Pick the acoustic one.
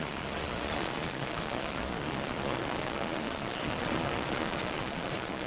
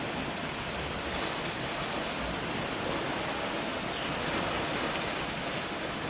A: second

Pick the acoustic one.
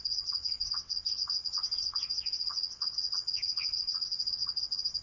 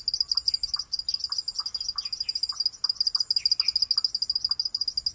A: second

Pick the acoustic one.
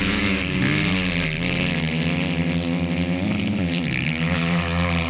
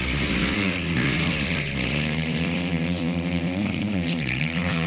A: first